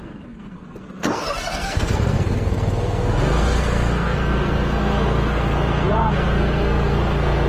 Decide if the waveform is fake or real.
fake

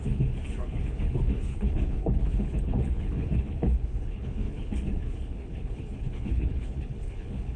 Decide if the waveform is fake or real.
fake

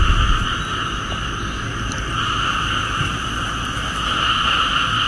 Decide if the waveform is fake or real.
real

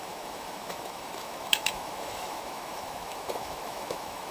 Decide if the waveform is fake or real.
fake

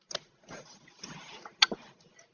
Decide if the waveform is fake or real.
real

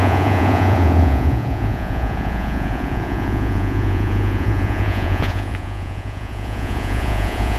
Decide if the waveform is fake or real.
fake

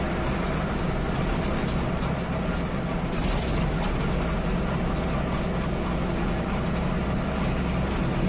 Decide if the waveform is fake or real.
real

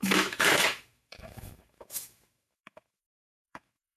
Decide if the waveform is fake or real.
fake